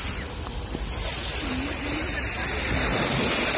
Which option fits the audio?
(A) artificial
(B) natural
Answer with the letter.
B